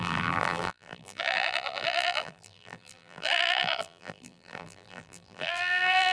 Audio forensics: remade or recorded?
remade